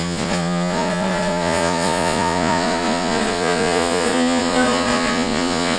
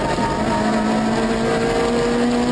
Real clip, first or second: second